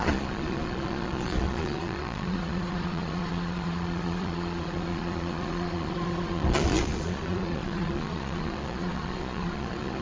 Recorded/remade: remade